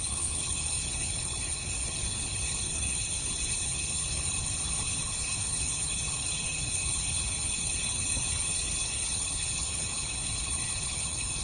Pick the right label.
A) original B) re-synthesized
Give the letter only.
B